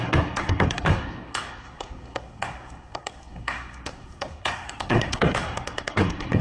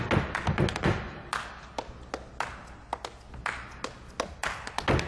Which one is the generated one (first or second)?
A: first